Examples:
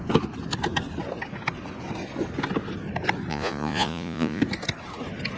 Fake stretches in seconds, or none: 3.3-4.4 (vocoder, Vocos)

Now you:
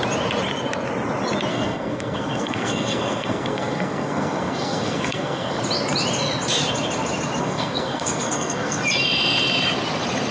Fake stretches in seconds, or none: 1.5-5.6 (codec, SNAC); 7.4-8.8

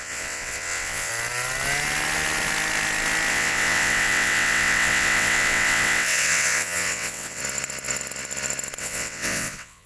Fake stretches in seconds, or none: 0.0-1.1 (vocoder, WaveNeXt); 3.3-7.4; 8.8-9.9

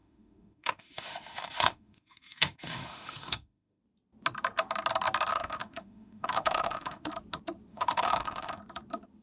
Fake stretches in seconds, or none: 0.0-3.8 (autoencoder, DAC-VAE); 5.3-7.1; 7.7-8.6

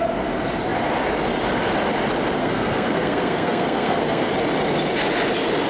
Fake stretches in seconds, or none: 2.4-4.3 (codec, SNAC)